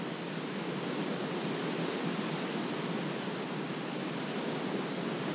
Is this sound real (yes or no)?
yes